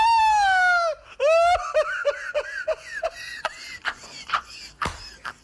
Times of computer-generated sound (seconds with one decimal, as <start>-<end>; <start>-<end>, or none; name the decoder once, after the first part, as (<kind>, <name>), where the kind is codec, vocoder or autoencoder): 2.0-4.6 (vocoder, Vocos)